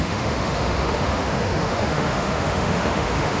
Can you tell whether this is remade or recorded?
remade